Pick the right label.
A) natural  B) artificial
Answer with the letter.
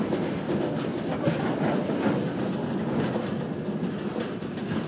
A